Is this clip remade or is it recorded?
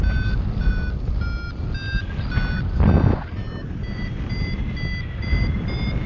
recorded